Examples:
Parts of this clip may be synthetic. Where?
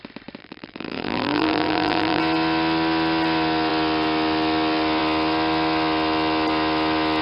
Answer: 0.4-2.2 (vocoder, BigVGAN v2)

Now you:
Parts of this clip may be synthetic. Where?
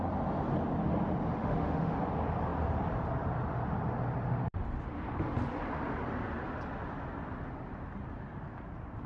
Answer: 1.4-2.0 (autoencoder, DAC-VAE)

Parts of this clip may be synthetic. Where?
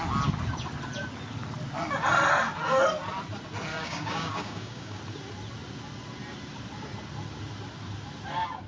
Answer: 3.7-5.0 (codec, DAC)